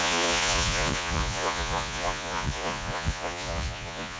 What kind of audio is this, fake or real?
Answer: fake